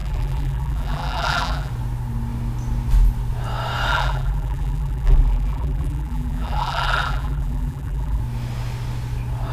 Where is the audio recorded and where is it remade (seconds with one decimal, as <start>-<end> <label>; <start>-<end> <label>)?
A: 0.0-1.7 remade; 1.7-3.9 recorded; 3.9-8.2 remade; 8.2-9.5 recorded